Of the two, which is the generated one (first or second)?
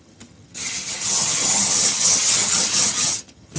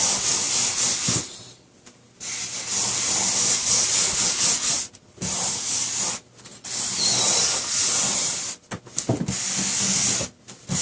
first